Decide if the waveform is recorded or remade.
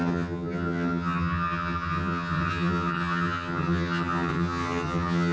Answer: remade